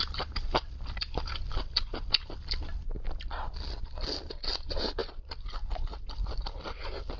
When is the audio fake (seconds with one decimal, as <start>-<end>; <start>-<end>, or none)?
none